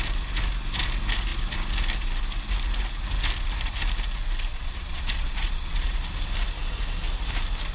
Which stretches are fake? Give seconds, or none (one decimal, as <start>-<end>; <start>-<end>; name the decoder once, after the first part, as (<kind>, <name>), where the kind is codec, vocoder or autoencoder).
4.5-6.1 (vocoder, Vocos)